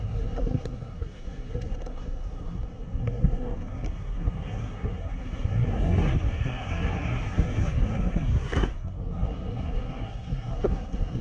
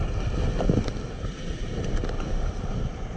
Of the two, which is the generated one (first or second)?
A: first